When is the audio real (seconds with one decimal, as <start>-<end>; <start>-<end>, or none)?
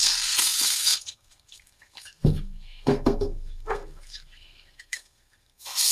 none